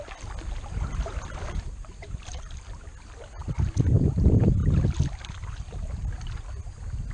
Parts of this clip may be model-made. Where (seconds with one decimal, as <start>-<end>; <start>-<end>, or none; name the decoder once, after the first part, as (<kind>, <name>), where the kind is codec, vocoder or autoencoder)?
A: 1.1-1.8 (vocoder, BigVGAN v2); 4.6-7.1